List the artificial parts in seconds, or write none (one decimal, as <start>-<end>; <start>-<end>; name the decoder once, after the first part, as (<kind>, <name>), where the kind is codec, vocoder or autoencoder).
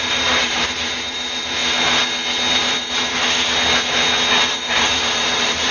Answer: 0.0-1.6 (vocoder, BigVGAN v2); 2.5-3.2; 4.5-5.7